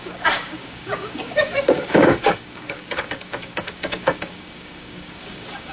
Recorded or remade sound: remade